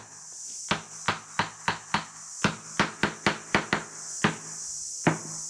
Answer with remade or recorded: recorded